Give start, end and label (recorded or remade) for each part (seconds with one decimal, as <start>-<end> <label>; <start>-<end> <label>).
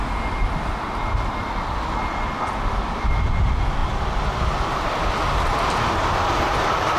0.0-7.0 recorded